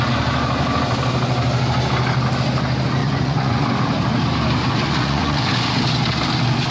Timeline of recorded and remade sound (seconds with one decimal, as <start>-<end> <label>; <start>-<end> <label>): 0.0-3.0 recorded; 3.0-3.7 remade; 3.7-4.6 recorded; 4.6-5.4 remade; 5.4-6.7 recorded